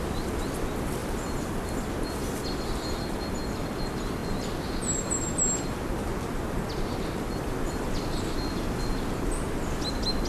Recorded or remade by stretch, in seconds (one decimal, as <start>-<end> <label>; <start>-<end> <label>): 0.0-10.3 recorded